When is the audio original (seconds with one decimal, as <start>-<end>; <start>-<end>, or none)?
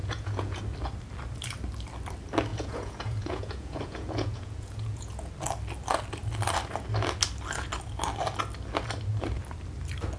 0.6-2.5; 5.3-10.2